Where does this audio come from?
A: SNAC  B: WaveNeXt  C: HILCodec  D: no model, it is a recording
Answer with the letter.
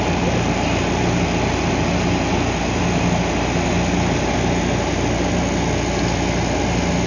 D